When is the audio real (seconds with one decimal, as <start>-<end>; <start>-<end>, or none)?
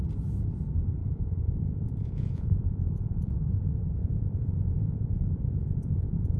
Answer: 0.0-1.0; 3.3-4.0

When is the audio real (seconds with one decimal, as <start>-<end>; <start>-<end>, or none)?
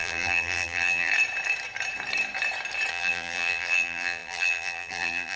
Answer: 1.1-2.9